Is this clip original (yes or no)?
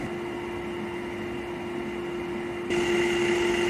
yes